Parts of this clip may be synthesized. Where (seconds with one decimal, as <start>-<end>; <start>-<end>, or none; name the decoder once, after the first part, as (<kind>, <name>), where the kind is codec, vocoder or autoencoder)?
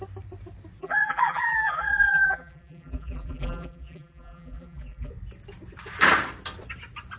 0.8-5.1 (vocoder, BigVGAN v2)